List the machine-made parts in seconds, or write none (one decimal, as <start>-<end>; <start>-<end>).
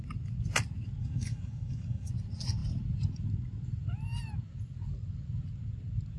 1.0-2.1